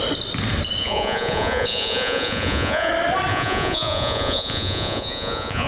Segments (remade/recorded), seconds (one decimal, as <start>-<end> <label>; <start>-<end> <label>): 0.0-0.8 recorded; 0.8-2.9 remade; 2.9-3.3 recorded; 3.3-5.7 remade